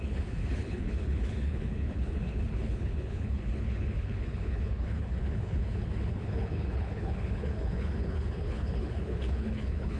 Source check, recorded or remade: remade